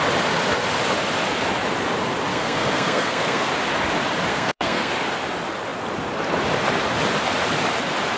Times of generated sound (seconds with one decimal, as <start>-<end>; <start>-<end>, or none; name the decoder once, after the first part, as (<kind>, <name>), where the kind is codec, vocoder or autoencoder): 2.3-3.5 (codec, SNAC); 4.3-4.9